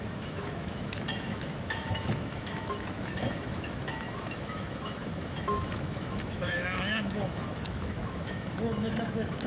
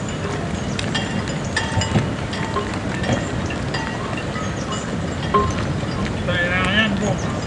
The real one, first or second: second